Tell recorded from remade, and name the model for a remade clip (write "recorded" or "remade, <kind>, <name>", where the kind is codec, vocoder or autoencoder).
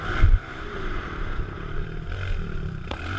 remade, vocoder, BigVGAN v2